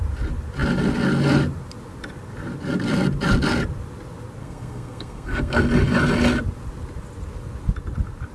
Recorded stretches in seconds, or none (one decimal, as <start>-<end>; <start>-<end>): 0.0-4.4; 5.6-8.3